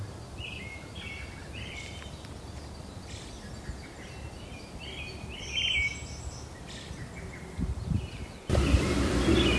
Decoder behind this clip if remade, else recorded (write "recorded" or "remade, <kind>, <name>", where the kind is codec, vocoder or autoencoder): recorded